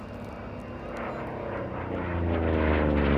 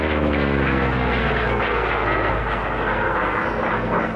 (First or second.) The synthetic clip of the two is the second